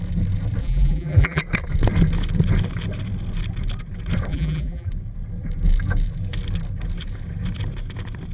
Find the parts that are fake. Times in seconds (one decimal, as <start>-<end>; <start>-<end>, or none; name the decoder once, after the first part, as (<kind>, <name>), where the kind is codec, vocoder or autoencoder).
0.6-1.4 (vocoder, BigVGAN v2); 4.3-4.9